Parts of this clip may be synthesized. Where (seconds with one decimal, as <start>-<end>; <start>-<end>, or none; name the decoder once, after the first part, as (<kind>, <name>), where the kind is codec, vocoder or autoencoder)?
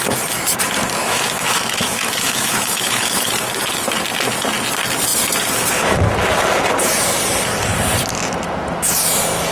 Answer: 1.0-3.3 (autoencoder, DAC-VAE)